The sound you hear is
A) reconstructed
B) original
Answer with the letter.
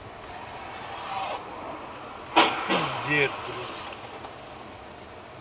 B